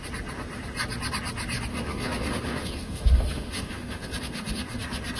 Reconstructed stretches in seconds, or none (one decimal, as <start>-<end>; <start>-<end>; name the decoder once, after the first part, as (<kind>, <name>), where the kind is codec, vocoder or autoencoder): 1.7-4.8 (autoencoder, DAC-VAE)

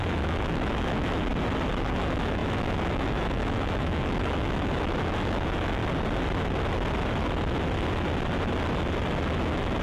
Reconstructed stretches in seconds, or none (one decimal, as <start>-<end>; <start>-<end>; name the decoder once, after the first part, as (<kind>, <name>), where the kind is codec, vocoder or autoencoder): 0.0-1.3 (autoencoder, DAC-VAE); 1.9-5.8; 9.4-9.8

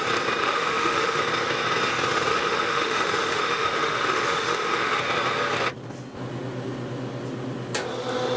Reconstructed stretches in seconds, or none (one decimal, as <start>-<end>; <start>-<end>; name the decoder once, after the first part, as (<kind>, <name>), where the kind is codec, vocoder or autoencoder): 0.4-1.2 (autoencoder, DAC-VAE); 2.3-5.0

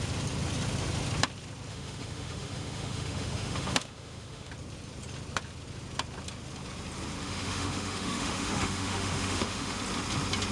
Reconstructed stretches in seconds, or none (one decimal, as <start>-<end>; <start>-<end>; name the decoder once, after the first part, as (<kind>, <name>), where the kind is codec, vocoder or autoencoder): 1.7-4.5 (autoencoder, DAC-VAE); 7.2-9.8

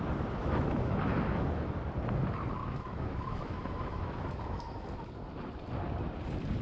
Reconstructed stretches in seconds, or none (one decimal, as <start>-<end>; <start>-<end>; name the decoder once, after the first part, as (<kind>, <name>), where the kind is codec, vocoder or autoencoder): 0.4-1.8 (autoencoder, DAC-VAE); 2.6-5.1